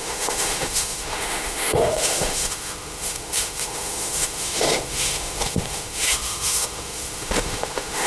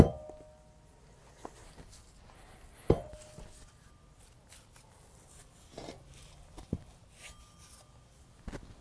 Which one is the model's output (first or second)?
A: first